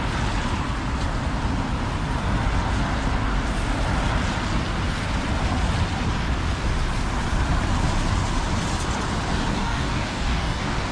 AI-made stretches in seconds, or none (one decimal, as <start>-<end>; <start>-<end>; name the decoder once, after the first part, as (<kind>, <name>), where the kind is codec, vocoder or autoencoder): 9.5-10.9 (codec, DAC)